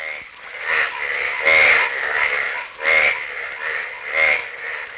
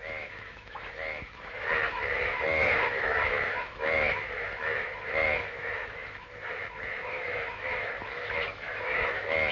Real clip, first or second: first